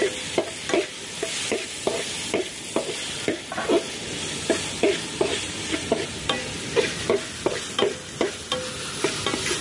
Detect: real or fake real